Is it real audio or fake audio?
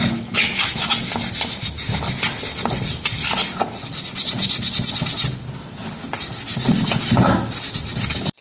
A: real